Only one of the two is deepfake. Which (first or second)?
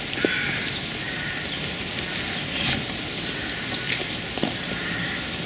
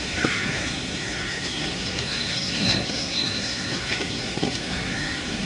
second